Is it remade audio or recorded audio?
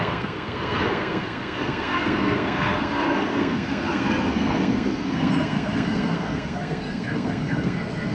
remade